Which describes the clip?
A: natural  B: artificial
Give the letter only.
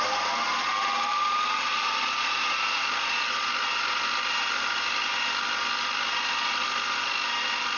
A